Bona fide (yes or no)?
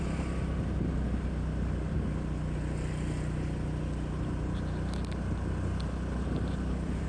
yes